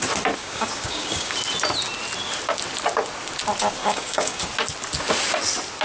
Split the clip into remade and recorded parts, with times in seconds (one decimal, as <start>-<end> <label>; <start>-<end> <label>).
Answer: 0.0-0.4 recorded; 0.4-1.3 remade; 1.3-3.8 recorded; 3.8-4.4 remade; 4.4-5.8 recorded